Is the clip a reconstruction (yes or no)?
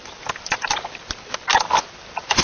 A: no